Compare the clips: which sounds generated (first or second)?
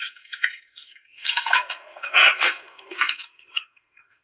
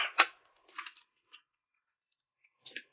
first